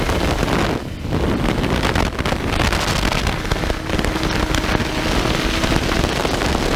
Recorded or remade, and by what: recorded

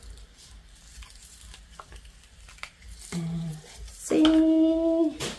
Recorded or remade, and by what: recorded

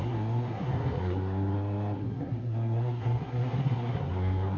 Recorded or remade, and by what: remade, codec, SNAC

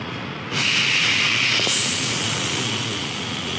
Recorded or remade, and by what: remade, vocoder, Vocos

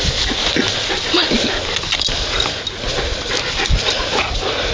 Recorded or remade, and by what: recorded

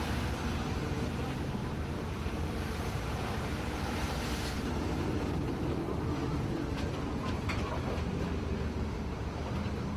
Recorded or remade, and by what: remade, vocoder, BigVGAN v2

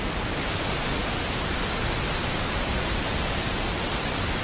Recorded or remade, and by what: remade, vocoder, BigVGAN v2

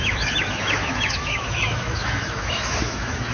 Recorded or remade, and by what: remade, autoencoder, DAC-VAE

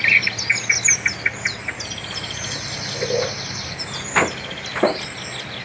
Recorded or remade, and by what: recorded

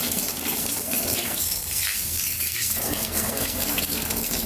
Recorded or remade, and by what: remade, codec, SNAC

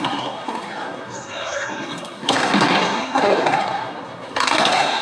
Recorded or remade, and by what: remade, codec, SNAC